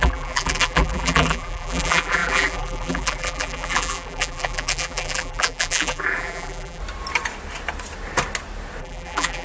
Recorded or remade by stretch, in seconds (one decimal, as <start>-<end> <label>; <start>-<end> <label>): 0.0-6.8 remade; 6.8-8.8 recorded; 8.8-9.4 remade